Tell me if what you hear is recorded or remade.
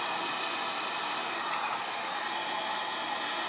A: recorded